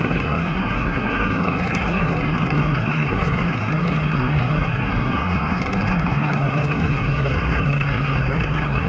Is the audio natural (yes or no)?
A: no